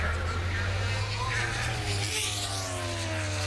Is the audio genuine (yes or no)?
yes